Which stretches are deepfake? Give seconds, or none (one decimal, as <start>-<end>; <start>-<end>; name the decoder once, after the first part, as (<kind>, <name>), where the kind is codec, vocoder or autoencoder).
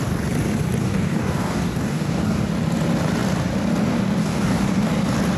0.8-2.4 (codec, DAC); 4.2-4.9